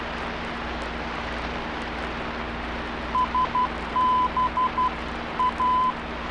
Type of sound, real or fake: real